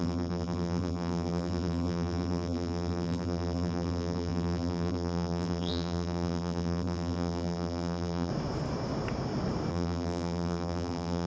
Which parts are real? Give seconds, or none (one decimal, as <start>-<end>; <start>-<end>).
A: 8.3-9.7